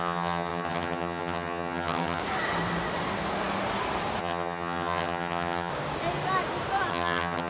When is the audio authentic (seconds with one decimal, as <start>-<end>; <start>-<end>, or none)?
2.2-4.2; 5.7-6.9